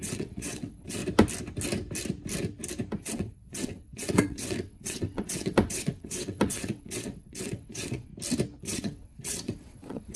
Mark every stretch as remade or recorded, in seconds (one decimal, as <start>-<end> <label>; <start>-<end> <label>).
0.0-1.0 remade; 1.0-3.0 recorded; 3.0-8.1 remade; 8.1-8.6 recorded; 8.6-10.2 remade